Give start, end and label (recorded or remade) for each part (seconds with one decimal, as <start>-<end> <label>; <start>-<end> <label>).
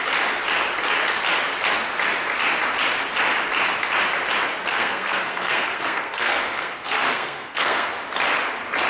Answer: 0.0-4.7 recorded; 4.7-7.9 remade; 7.9-8.9 recorded